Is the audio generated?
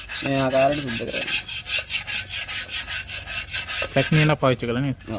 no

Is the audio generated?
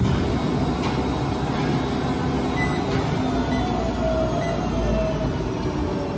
no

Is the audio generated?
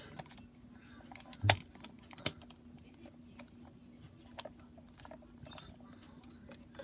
no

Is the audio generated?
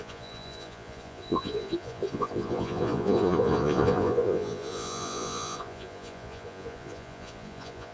yes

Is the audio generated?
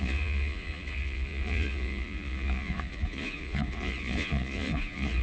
yes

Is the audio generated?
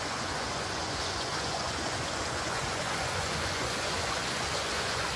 yes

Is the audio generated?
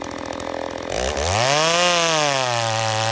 no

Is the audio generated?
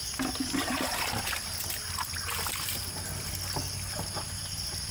no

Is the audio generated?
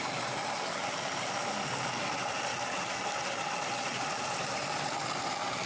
no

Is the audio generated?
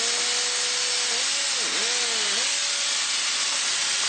no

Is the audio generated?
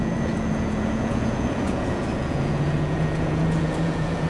yes